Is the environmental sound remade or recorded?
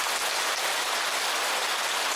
recorded